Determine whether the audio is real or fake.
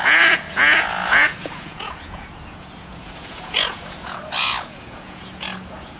fake